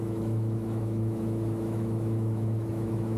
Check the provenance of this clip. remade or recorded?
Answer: remade